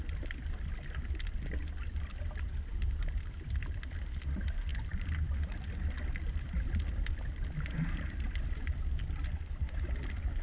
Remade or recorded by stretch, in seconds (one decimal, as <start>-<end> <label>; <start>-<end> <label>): 0.0-10.4 recorded